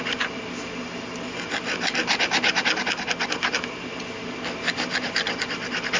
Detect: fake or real real